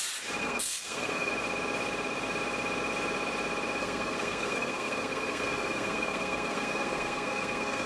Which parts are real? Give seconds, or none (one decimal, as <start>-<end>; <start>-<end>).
0.0-0.4; 1.3-3.8